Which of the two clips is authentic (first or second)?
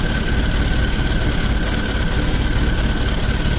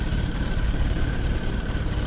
first